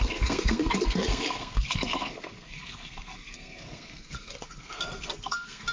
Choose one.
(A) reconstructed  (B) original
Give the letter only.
A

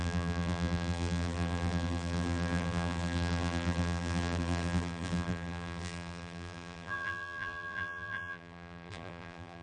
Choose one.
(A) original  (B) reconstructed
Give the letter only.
B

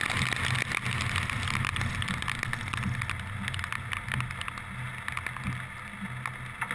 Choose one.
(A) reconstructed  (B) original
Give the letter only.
B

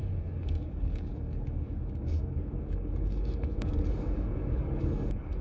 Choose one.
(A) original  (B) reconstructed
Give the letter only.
B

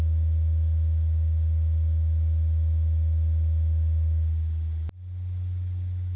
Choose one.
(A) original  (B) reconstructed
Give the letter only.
A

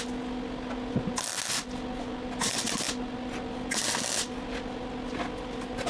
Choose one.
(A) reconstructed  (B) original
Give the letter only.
B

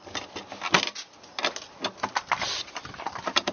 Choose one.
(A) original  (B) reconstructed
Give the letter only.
A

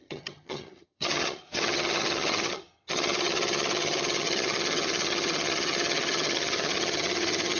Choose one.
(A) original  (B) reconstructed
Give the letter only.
B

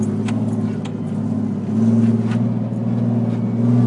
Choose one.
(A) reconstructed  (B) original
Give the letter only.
B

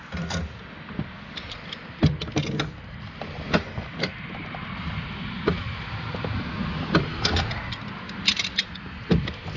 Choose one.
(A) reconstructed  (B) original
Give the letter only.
B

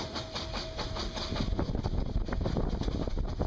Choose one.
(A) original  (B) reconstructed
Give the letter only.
A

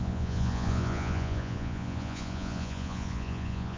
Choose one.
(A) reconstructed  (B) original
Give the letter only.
A